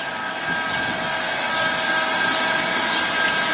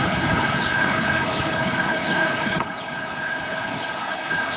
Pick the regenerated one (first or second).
second